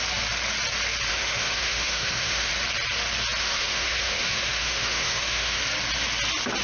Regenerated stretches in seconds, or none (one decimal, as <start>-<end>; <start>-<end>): 1.1-2.5; 3.4-5.6

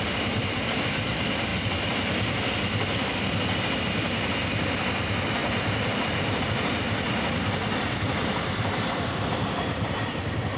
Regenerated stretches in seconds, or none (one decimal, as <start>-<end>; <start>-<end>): 1.5-2.4; 5.4-10.6

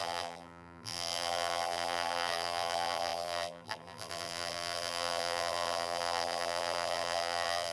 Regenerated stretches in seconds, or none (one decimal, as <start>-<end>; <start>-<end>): 0.0-7.7